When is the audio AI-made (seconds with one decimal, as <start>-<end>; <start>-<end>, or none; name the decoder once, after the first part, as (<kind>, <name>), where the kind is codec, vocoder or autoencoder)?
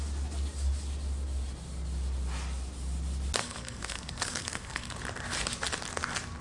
3.4-4.9 (codec, SNAC)